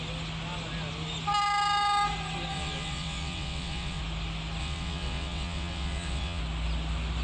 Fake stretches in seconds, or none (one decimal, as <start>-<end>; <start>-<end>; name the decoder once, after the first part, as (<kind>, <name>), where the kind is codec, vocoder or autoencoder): 2.5-4.0 (vocoder, WaveNeXt); 4.6-6.4